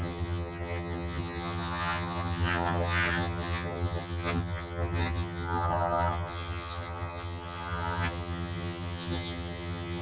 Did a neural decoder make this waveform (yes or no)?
yes